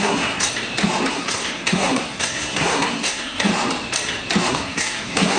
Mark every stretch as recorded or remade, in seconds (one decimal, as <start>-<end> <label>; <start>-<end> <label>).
0.0-0.5 remade; 0.5-1.1 recorded; 1.1-3.5 remade; 3.5-4.5 recorded; 4.5-5.4 remade